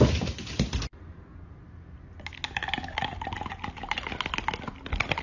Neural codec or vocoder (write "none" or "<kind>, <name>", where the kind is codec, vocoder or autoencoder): none